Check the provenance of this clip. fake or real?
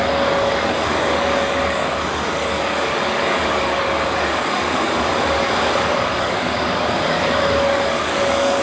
fake